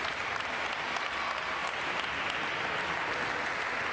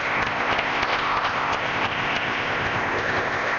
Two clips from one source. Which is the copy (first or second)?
second